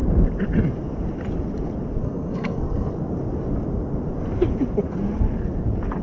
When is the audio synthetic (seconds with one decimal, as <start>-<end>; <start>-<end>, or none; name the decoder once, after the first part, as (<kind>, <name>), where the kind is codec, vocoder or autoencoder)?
2.0-2.9 (codec, SNAC)